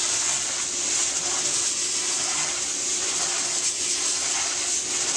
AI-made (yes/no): no